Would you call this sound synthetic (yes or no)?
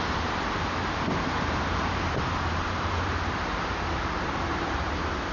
yes